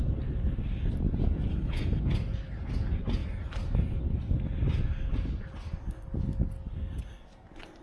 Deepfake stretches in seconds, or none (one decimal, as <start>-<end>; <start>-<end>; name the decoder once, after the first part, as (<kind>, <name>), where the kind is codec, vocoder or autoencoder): 1.5-2.0 (codec, HILCodec)